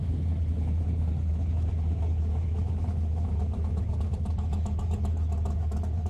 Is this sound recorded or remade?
remade